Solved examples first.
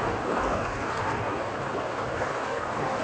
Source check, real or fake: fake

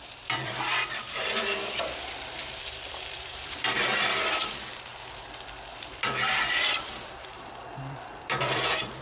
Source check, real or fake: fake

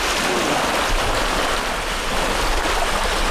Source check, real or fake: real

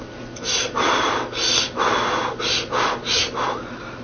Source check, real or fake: real